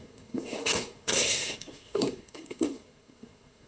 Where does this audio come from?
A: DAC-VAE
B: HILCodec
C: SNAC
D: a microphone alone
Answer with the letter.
C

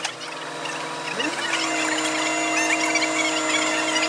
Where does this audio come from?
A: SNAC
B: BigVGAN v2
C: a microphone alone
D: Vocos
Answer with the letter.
C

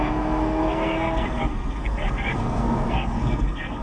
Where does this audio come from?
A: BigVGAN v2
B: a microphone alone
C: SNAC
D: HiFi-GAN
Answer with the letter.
C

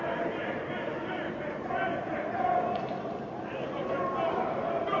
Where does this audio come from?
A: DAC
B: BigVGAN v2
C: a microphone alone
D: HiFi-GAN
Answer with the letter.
C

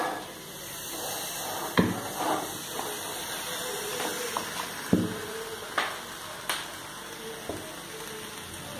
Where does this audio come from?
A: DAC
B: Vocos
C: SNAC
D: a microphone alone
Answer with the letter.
D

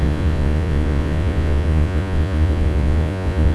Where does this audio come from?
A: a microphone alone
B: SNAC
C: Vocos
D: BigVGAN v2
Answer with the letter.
C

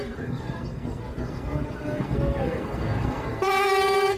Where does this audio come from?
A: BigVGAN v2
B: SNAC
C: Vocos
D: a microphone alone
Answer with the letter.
B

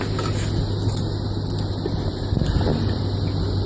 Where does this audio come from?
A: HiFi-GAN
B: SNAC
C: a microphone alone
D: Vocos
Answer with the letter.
C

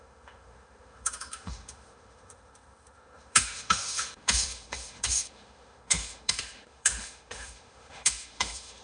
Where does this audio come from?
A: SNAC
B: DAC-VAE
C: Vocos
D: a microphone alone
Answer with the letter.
B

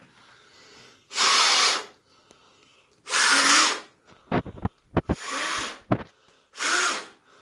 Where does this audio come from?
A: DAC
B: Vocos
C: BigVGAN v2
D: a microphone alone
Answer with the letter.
D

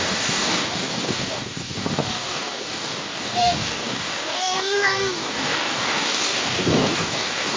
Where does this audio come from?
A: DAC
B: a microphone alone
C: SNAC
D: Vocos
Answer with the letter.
A